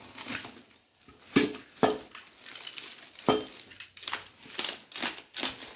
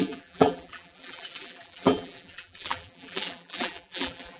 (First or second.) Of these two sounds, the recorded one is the first